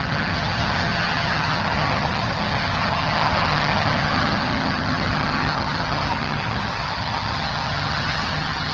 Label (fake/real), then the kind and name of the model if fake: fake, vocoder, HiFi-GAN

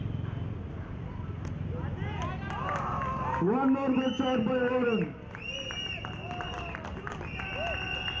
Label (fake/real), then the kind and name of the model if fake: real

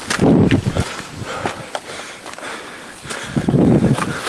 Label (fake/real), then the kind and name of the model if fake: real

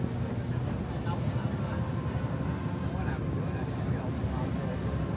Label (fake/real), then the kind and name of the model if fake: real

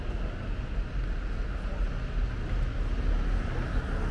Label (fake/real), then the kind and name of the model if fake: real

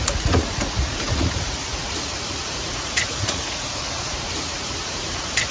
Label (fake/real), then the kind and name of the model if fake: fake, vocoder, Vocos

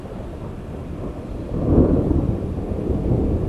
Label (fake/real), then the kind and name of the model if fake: fake, vocoder, BigVGAN v2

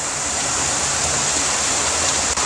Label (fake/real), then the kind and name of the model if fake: fake, vocoder, BigVGAN v2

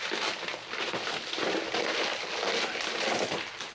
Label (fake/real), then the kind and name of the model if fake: real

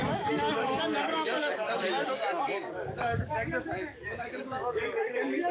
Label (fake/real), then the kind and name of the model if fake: fake, codec, DAC